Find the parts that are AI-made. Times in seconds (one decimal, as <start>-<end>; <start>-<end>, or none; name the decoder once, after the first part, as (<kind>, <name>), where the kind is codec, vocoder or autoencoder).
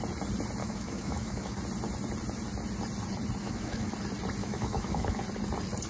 0.6-1.6 (autoencoder, DAC-VAE); 3.4-3.9; 4.4-5.2